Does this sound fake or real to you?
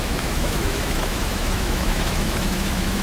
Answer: fake